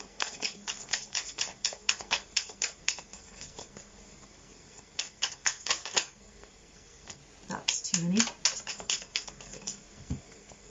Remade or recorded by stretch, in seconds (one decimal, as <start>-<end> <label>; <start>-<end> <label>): 0.0-7.2 remade; 7.2-8.7 recorded; 8.7-10.7 remade